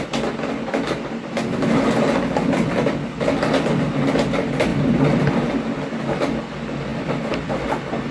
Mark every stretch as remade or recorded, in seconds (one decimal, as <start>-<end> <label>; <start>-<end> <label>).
0.0-8.1 recorded